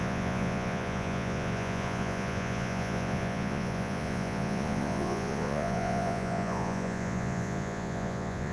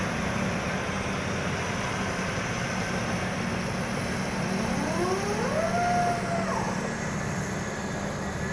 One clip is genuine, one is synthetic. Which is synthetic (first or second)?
first